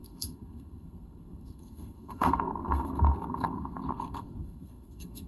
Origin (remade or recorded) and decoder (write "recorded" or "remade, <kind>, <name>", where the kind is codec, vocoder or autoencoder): remade, codec, SNAC